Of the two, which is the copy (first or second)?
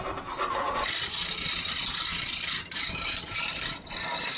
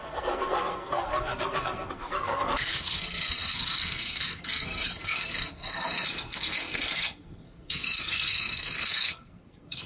second